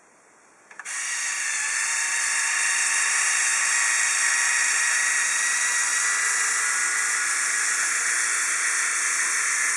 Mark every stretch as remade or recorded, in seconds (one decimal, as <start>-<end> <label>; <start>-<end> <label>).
0.0-3.5 remade; 3.5-5.3 recorded; 5.3-5.9 remade; 5.9-7.8 recorded; 7.8-9.8 remade